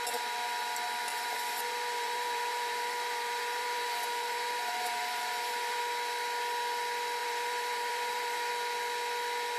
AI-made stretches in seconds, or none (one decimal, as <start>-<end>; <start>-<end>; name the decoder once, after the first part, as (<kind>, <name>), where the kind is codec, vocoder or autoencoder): 1.1-5.8 (vocoder, BigVGAN v2); 7.2-8.5